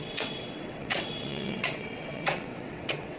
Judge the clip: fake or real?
fake